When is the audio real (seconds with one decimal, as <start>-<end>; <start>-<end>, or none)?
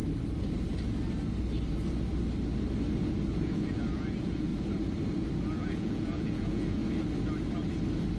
0.0-3.3; 4.5-5.6; 6.8-8.2